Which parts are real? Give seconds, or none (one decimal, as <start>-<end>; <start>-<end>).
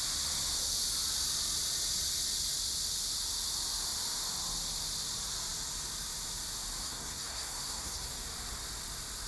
0.0-6.8; 8.1-9.3